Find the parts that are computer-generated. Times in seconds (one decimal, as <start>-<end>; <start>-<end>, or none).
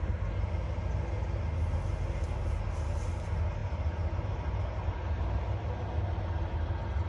none